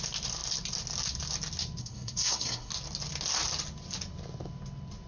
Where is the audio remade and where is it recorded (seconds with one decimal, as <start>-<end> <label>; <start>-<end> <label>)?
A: 0.0-1.8 recorded; 1.8-2.7 remade; 2.7-5.1 recorded